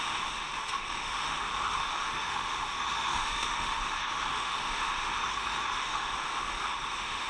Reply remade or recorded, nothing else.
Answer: remade